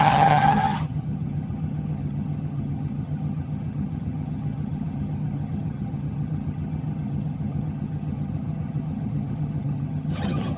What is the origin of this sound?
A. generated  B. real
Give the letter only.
A